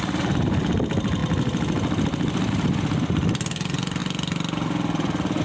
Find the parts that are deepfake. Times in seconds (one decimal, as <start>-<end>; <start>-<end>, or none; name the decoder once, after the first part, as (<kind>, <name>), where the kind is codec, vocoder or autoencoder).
none